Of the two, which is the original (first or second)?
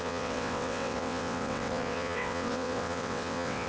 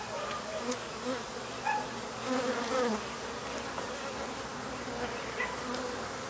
second